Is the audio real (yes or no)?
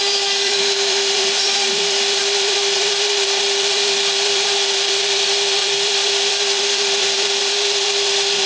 no